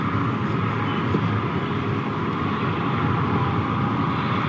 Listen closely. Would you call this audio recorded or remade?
recorded